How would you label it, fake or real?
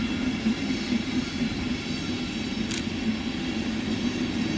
real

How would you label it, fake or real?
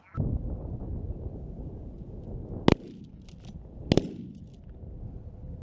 real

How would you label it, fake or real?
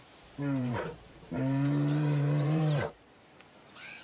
fake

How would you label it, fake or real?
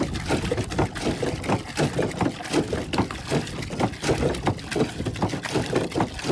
real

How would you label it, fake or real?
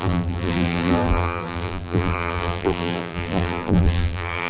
fake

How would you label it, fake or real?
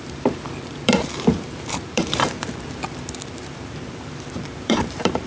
fake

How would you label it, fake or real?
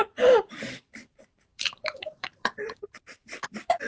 fake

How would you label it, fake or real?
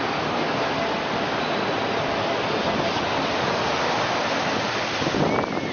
real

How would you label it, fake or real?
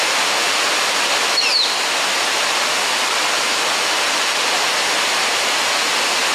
real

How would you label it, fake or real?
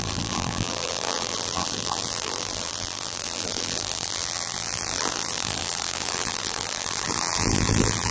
fake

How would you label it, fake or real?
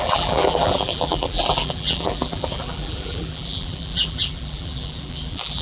fake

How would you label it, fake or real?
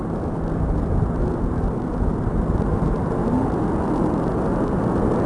real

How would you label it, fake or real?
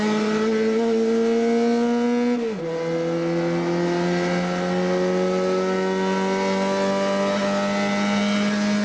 real